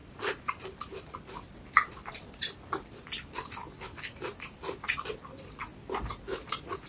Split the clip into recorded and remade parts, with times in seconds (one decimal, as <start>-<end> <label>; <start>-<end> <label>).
0.0-0.9 recorded; 0.9-3.6 remade; 3.6-4.6 recorded; 4.6-5.7 remade; 5.7-6.2 recorded; 6.2-6.9 remade